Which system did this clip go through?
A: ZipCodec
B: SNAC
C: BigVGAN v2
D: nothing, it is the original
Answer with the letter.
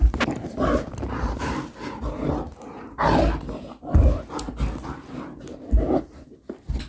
D